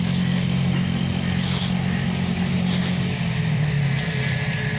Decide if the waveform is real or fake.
real